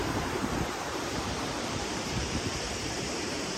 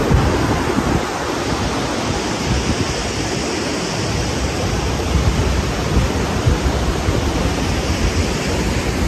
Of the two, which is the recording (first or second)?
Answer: second